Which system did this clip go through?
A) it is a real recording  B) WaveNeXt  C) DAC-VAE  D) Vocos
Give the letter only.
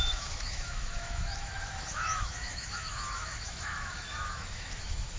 C